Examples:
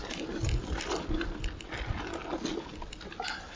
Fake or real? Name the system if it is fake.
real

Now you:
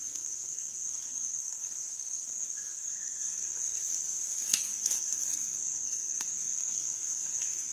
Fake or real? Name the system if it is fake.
fake, codec, SNAC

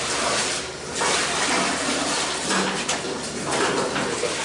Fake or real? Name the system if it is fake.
real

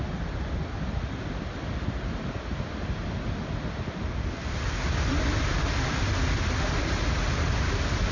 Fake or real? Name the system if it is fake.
real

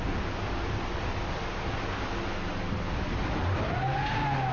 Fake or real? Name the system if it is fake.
real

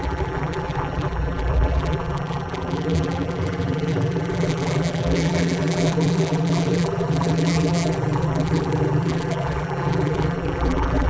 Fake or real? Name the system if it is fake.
fake, vocoder, BigVGAN v2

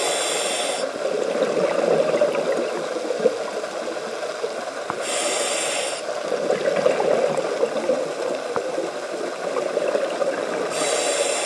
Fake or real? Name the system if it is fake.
real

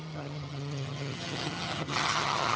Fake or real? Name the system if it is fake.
fake, vocoder, HiFi-GAN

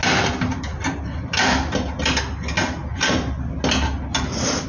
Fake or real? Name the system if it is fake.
real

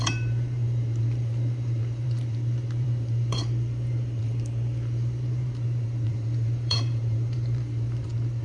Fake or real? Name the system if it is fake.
fake, vocoder, BigVGAN v2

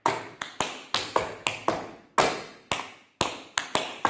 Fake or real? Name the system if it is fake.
real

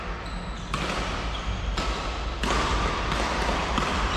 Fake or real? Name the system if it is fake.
real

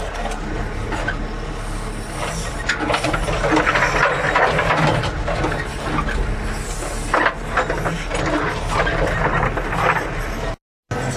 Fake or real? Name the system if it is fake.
real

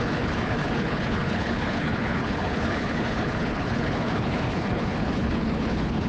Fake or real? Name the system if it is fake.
fake, codec, HILCodec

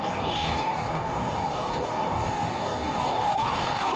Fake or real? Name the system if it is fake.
fake, codec, DAC